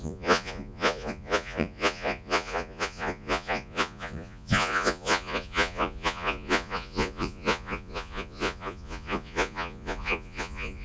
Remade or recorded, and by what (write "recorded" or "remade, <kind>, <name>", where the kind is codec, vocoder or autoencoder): remade, vocoder, Vocos